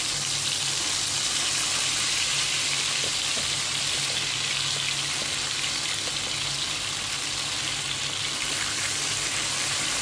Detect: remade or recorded recorded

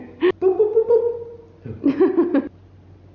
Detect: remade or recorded recorded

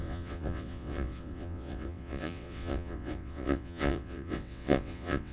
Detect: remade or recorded remade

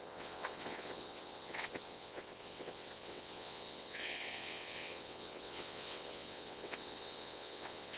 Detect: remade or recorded remade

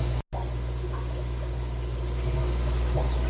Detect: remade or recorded recorded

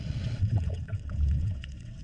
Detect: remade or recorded remade